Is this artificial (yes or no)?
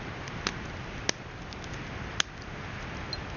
no